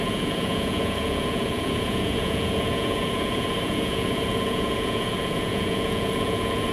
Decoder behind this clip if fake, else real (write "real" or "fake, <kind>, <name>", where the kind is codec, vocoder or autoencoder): fake, vocoder, Vocos